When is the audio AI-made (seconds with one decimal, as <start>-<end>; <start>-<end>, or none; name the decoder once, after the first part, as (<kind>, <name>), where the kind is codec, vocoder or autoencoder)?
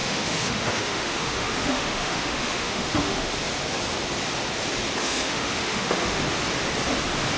0.0-3.3 (autoencoder, DAC-VAE); 5.0-6.2